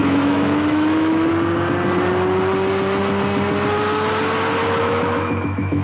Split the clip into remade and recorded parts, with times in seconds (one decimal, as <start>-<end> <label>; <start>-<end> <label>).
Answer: 0.0-1.3 remade; 1.3-4.8 recorded; 4.8-5.8 remade